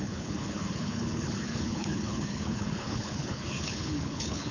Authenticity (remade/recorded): remade